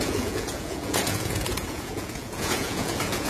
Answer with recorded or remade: remade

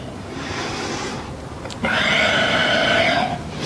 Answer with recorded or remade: remade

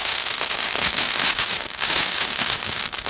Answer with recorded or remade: remade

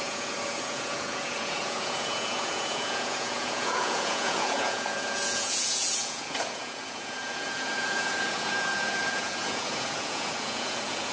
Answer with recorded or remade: remade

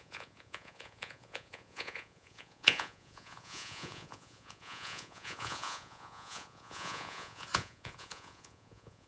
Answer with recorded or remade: remade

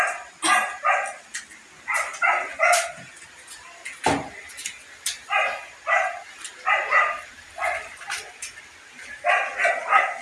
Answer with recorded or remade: recorded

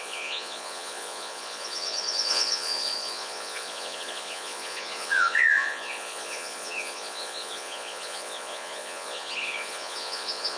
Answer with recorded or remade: remade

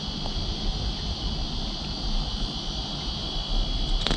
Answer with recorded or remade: recorded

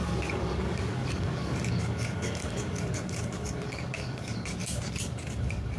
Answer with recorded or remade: remade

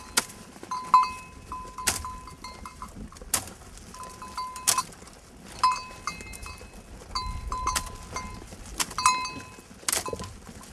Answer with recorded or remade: recorded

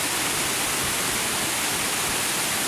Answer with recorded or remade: recorded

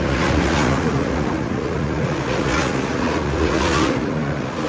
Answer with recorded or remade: remade